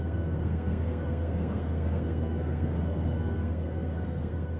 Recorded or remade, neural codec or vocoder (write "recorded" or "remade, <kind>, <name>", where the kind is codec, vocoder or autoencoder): remade, codec, SNAC